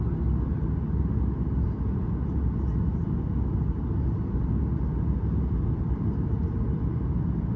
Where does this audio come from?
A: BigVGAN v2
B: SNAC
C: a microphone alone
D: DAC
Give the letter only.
C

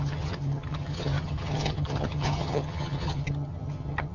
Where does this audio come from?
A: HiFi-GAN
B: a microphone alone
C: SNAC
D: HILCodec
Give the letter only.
A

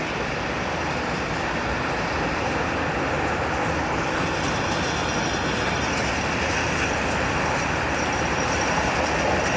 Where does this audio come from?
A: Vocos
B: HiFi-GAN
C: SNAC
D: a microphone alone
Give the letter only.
D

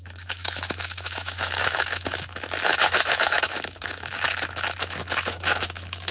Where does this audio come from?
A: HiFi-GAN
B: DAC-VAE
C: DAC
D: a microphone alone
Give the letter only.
B